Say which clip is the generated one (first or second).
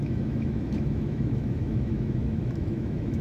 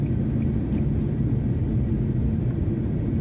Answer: first